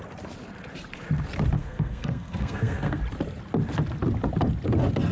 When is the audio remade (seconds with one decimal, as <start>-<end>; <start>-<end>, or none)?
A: 1.6-3.0